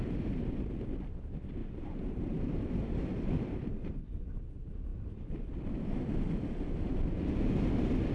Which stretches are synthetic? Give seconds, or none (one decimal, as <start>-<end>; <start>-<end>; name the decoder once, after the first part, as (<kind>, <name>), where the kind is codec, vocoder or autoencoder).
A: 1.6-4.0 (vocoder, BigVGAN v2)